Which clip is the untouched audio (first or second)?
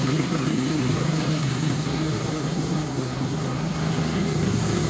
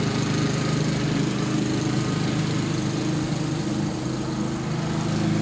second